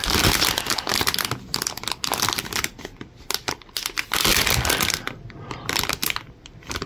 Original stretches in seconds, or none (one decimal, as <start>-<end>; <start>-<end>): 0.0-6.9